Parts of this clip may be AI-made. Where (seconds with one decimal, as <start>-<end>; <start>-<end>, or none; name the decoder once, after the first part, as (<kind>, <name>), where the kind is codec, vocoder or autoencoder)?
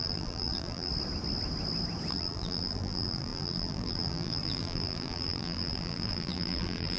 0.0-0.9 (vocoder, BigVGAN v2); 2.1-7.0